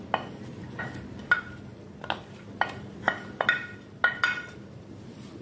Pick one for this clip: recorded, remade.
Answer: recorded